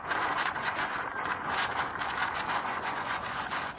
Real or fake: fake